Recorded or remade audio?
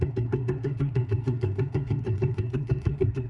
remade